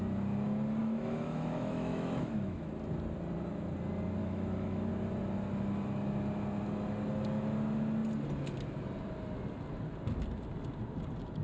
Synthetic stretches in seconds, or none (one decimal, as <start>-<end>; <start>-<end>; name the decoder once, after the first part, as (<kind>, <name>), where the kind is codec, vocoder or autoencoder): 0.8-2.7 (autoencoder, DAC-VAE); 4.2-4.9